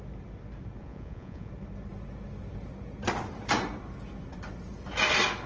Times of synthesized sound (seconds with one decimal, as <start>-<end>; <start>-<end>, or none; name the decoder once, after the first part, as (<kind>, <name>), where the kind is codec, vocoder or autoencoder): 0.8-1.5 (vocoder, Vocos)